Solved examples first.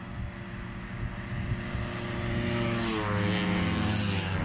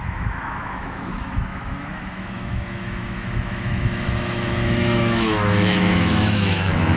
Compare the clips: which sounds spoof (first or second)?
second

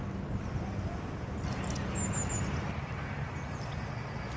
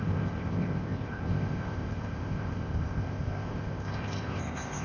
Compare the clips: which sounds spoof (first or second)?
second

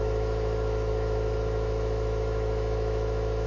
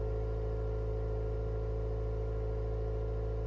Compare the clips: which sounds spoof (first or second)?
first